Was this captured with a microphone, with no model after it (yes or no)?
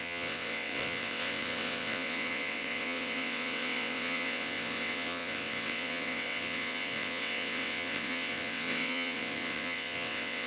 no